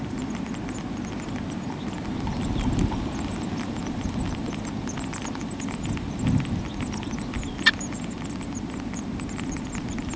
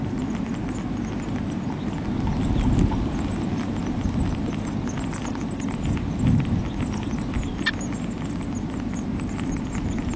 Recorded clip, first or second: second